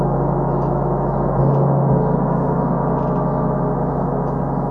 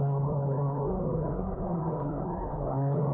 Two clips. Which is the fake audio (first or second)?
second